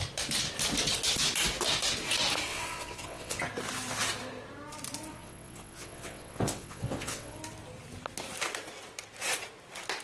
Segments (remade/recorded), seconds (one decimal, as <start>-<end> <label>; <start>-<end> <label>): 0.0-2.5 recorded; 2.5-3.4 remade; 3.4-5.1 recorded; 5.1-7.4 remade; 7.4-10.0 recorded